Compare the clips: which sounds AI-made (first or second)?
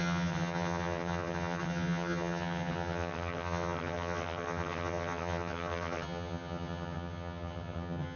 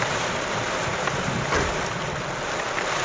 first